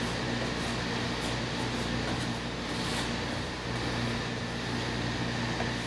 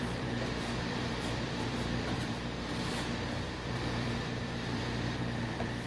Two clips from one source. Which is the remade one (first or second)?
second